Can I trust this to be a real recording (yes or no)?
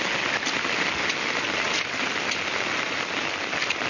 yes